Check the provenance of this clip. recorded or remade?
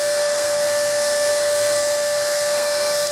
remade